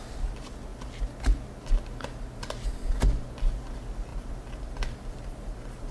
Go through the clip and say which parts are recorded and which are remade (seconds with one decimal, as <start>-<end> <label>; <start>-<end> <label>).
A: 0.0-4.1 recorded; 4.1-5.9 remade